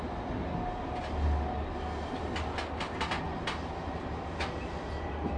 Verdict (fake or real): real